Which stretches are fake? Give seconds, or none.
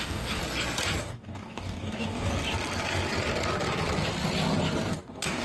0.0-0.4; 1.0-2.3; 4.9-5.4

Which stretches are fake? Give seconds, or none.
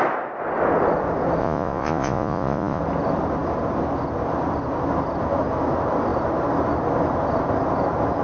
1.4-2.8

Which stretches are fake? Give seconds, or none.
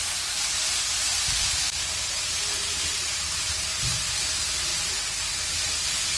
4.7-5.3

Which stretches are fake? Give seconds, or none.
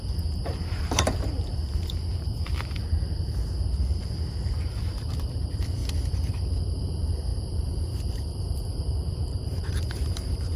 0.0-5.8; 6.3-10.6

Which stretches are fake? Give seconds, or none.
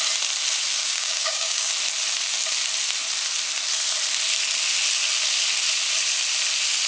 0.8-1.7